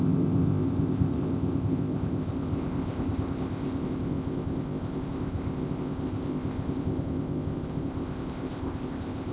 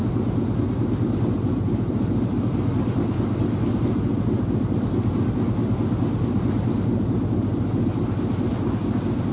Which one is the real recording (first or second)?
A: second